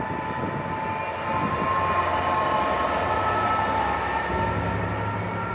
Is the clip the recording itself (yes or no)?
yes